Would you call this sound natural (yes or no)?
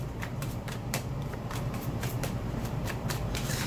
no